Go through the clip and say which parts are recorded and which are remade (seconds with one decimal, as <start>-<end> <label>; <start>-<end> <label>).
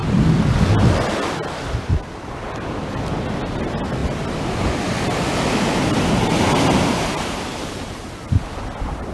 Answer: 0.0-9.1 recorded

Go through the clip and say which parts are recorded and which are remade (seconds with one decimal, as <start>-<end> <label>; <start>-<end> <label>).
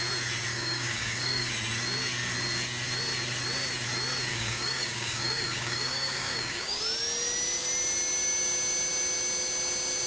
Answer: 0.0-0.5 recorded; 0.5-1.5 remade; 1.5-4.3 recorded; 4.3-6.8 remade; 6.8-10.1 recorded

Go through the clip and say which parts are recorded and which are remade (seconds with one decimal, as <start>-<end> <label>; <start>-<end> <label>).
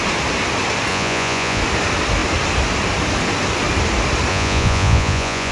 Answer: 0.0-0.9 recorded; 0.9-1.6 remade; 1.6-4.3 recorded; 4.3-5.5 remade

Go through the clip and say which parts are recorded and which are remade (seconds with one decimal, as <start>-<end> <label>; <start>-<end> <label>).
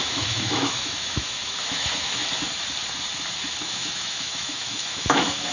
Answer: 0.0-2.2 remade; 2.2-3.6 recorded; 3.6-5.5 remade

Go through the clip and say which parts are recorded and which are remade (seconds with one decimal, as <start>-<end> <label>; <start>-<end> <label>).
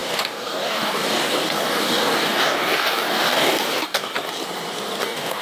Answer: 0.0-4.1 remade; 4.1-5.0 recorded; 5.0-5.4 remade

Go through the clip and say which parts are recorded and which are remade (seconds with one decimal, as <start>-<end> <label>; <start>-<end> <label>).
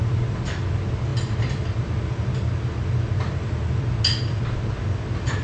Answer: 0.0-5.4 recorded